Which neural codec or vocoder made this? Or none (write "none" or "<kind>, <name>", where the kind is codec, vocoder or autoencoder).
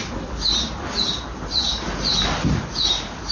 none